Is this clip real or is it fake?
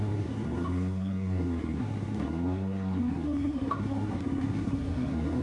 fake